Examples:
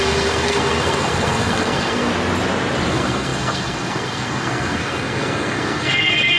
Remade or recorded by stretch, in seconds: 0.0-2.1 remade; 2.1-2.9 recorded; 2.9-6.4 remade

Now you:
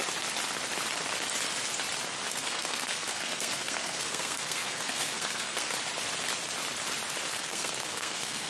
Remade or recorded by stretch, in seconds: 0.0-2.3 recorded; 2.3-5.7 remade; 5.7-7.3 recorded; 7.3-8.5 remade

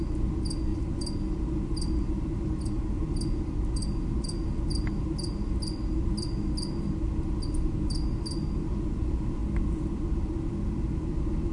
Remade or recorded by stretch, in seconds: 0.0-11.5 recorded

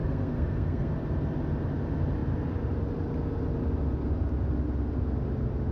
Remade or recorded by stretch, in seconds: 0.0-0.9 remade; 0.9-5.7 recorded

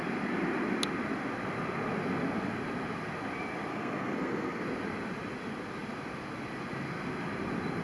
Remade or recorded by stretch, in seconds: 0.0-3.7 recorded; 3.7-4.6 remade; 4.6-7.8 recorded

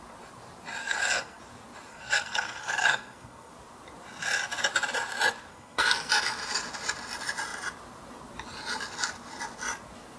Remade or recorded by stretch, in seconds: 0.0-0.8 recorded; 0.8-1.4 remade; 1.4-1.9 recorded; 1.9-3.5 remade; 3.5-5.5 recorded; 5.5-6.1 remade; 6.1-10.2 recorded

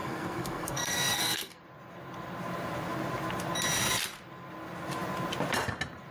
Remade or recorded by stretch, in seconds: 0.0-1.6 remade; 1.6-6.1 recorded